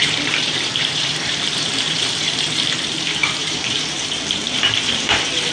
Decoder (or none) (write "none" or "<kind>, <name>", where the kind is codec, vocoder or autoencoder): vocoder, BigVGAN v2